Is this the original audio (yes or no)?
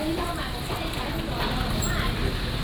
yes